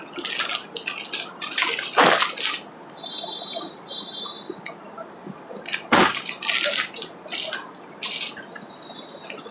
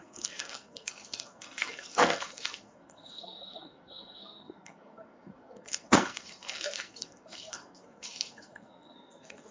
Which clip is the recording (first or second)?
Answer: first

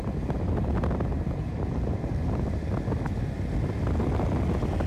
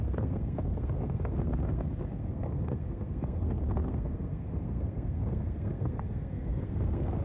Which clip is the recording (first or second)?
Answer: first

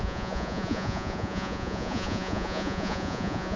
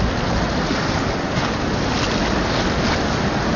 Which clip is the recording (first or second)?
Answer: second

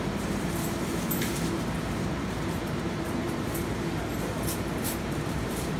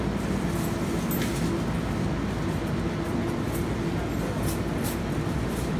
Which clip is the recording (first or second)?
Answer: second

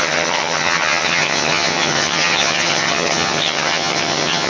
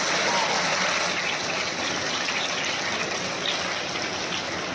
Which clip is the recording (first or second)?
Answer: second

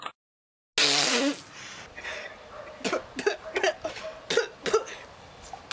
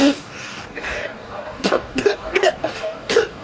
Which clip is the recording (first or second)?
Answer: first